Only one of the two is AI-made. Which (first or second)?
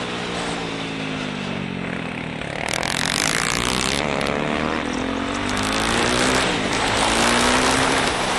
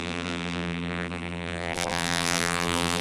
second